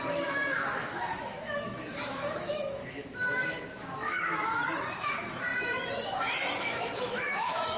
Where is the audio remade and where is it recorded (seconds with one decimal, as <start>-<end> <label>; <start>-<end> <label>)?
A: 0.0-7.8 remade